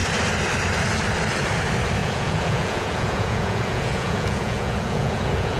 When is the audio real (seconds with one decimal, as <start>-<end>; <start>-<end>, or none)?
0.0-2.0